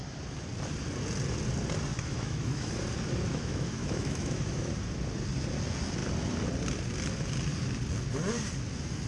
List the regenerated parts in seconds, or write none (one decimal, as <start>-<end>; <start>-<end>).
1.9-2.7; 3.3-4.7